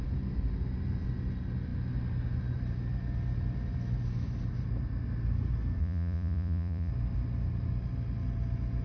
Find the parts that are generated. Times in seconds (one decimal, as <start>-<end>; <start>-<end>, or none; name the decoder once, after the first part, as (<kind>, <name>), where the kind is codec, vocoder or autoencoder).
5.8-6.9 (vocoder, Vocos)